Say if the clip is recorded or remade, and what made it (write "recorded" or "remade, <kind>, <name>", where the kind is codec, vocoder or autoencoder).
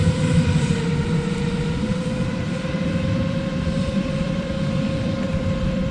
remade, vocoder, BigVGAN v2